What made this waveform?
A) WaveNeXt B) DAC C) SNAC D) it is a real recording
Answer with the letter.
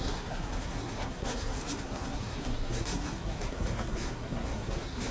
C